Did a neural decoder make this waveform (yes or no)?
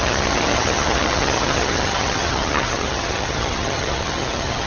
yes